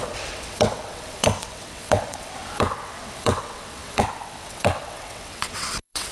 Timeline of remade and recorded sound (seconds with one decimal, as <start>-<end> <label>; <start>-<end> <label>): 0.0-6.1 remade

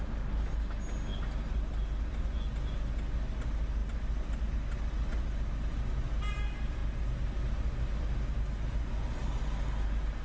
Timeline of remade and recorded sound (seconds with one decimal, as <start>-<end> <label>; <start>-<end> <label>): 0.0-10.2 recorded

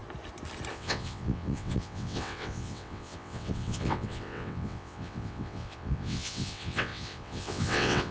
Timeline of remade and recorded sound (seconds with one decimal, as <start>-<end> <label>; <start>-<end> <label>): 0.0-0.7 recorded; 0.7-8.1 remade

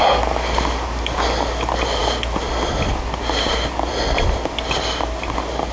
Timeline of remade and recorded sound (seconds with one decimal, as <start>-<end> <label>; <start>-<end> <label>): 0.0-5.7 recorded

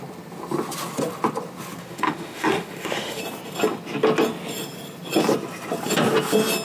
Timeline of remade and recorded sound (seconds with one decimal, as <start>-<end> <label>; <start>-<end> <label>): 0.0-1.8 recorded; 1.8-3.2 remade; 3.2-6.6 recorded

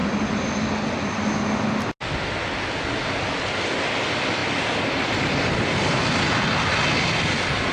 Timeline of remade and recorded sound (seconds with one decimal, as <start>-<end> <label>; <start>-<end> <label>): 0.0-7.7 recorded

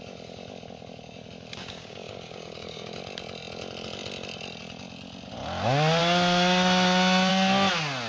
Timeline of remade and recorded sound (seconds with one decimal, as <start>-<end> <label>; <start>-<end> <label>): 0.0-1.6 recorded; 1.6-3.0 remade; 3.0-8.1 recorded